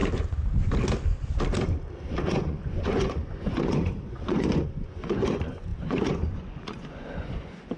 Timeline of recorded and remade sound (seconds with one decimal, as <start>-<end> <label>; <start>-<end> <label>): 0.0-2.2 recorded; 2.2-7.8 remade